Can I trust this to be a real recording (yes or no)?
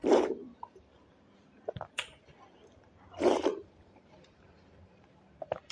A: no